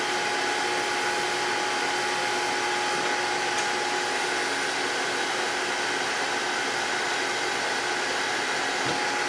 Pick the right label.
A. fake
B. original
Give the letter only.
B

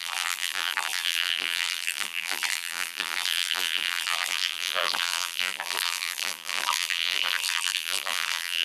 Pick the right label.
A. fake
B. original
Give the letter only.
A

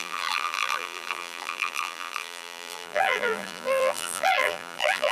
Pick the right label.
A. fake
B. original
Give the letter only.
A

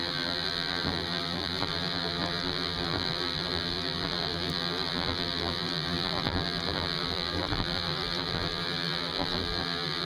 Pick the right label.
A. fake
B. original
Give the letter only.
A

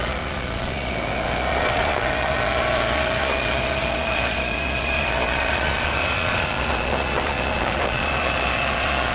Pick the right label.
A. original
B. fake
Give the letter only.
B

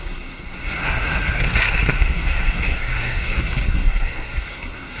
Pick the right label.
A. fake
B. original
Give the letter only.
A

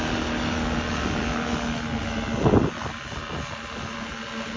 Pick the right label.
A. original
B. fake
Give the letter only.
A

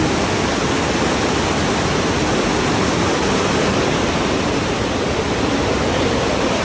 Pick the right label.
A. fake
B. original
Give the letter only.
B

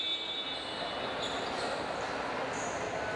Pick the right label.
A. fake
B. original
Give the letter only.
B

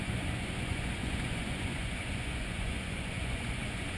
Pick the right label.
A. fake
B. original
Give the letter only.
A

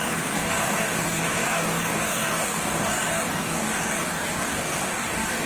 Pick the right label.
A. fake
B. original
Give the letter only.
A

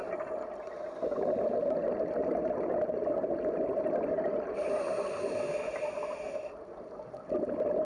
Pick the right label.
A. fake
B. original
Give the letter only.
B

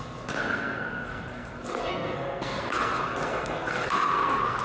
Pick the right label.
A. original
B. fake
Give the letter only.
B